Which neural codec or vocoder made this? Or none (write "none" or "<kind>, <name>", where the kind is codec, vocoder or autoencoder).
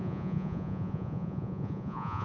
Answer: vocoder, Vocos